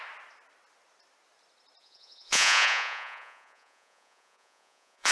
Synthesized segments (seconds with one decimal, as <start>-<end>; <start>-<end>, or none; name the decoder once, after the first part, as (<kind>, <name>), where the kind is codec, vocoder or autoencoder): 1.8-5.1 (vocoder, Vocos)